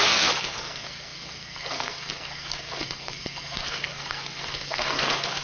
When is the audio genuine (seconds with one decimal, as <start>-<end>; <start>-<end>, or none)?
none